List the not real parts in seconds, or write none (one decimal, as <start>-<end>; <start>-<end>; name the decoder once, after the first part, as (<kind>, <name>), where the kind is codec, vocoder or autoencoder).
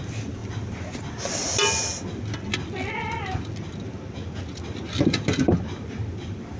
none